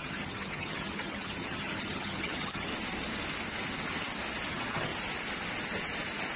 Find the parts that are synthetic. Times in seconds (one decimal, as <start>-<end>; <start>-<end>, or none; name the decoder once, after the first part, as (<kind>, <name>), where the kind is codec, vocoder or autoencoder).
0.0-2.7 (vocoder, HiFi-GAN); 4.5-4.9